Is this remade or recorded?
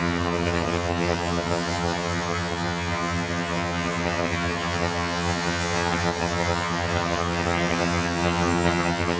remade